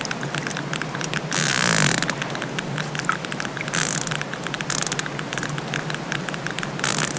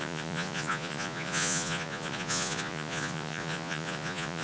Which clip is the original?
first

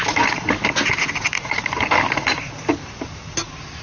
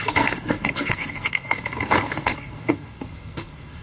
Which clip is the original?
first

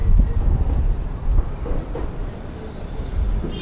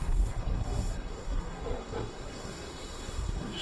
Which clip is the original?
first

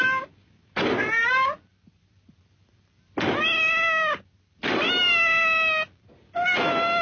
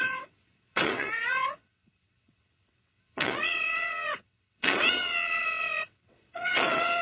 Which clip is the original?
first